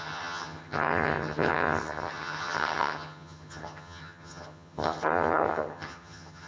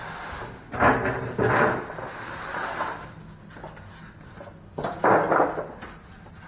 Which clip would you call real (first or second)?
second